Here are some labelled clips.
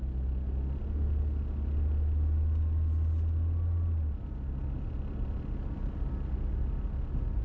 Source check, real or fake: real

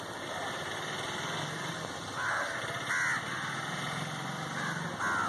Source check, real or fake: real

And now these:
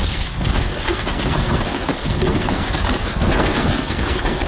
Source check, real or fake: fake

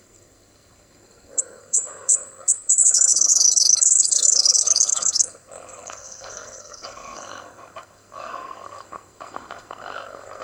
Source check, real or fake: fake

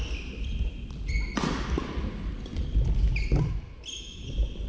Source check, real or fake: real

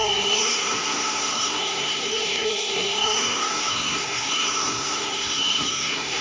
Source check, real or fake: fake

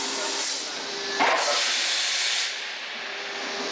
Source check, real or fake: real